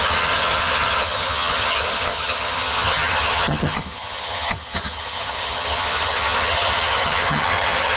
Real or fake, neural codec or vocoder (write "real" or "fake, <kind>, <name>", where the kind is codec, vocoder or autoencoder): fake, vocoder, HiFi-GAN